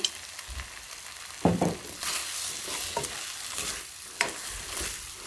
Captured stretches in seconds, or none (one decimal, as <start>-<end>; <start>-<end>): 0.0-5.3